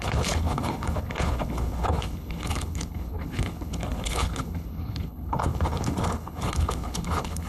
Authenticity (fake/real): fake